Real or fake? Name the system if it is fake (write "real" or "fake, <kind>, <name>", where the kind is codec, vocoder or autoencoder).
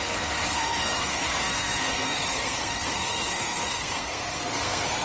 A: fake, codec, SNAC